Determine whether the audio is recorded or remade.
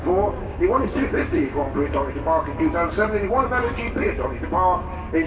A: remade